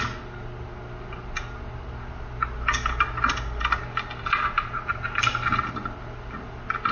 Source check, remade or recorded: recorded